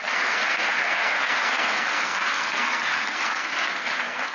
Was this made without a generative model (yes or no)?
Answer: no